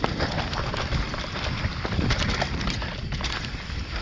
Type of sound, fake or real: fake